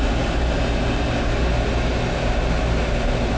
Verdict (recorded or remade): recorded